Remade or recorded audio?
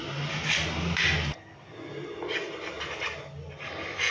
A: recorded